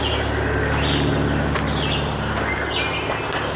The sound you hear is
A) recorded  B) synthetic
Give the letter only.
A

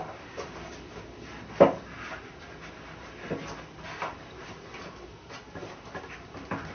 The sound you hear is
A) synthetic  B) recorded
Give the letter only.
B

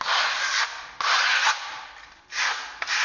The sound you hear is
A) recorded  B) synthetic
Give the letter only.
A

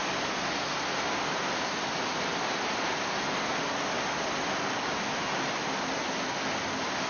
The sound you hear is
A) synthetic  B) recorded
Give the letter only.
B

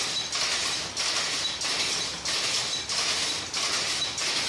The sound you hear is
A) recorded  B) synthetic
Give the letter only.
A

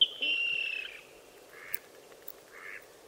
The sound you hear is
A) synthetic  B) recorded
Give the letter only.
B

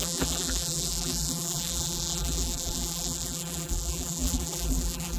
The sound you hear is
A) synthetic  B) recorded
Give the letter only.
A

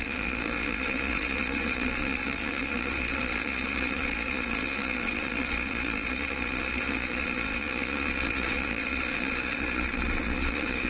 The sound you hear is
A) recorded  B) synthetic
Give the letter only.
B